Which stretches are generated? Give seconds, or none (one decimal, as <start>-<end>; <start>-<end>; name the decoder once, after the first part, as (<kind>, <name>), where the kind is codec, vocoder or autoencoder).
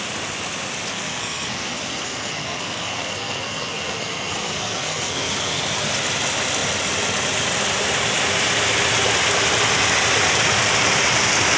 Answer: 0.9-5.6 (codec, SNAC)